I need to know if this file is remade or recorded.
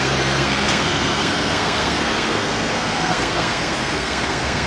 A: remade